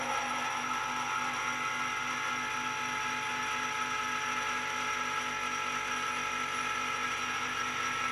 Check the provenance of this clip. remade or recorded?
recorded